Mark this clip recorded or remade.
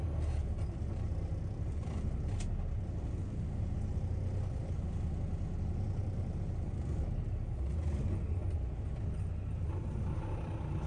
recorded